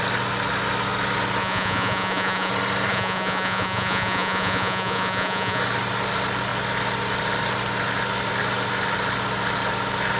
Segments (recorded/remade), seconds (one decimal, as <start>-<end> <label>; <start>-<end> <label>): 0.0-1.4 recorded; 1.4-2.5 remade; 2.5-2.9 recorded; 2.9-5.6 remade; 5.6-10.2 recorded